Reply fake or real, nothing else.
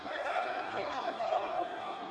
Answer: fake